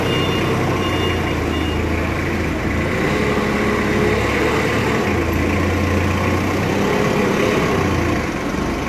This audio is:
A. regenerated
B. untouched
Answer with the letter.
B